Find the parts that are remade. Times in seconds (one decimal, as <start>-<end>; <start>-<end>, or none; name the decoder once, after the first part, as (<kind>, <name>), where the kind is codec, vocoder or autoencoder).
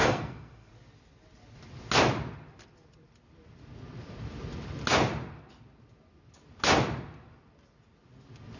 0.0-0.7 (codec, SNAC)